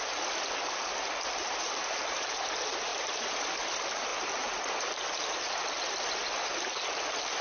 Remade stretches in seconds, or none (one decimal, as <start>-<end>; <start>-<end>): 2.9-3.6; 4.1-4.8